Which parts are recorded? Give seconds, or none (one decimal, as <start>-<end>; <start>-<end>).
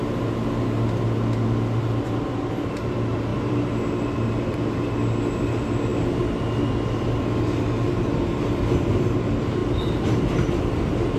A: 0.0-3.3; 3.8-11.2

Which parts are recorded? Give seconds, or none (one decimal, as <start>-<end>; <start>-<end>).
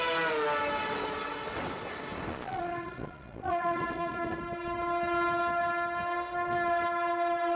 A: 0.0-2.3; 4.4-7.6